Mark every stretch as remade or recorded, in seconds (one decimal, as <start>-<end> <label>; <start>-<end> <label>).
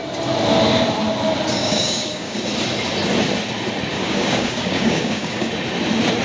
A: 0.0-1.6 recorded; 1.6-2.4 remade; 2.4-3.9 recorded; 3.9-5.5 remade; 5.5-6.2 recorded